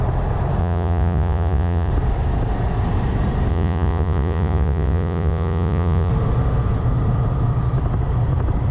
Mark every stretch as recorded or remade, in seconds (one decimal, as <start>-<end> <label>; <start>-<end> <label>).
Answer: 0.0-0.6 recorded; 0.6-1.9 remade; 1.9-3.5 recorded; 3.5-6.1 remade; 6.1-8.7 recorded